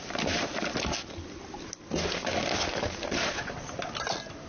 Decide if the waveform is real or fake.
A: real